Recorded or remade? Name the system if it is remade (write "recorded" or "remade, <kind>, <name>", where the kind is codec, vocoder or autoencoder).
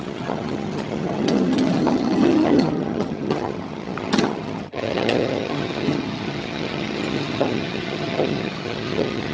remade, vocoder, HiFi-GAN